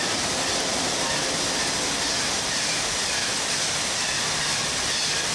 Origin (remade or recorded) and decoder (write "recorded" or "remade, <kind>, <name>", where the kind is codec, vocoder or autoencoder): recorded